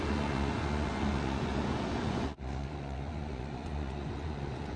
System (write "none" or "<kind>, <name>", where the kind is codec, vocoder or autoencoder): vocoder, Vocos